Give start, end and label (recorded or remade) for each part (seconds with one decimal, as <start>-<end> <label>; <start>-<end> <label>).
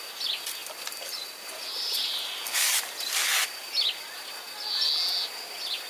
0.0-5.9 recorded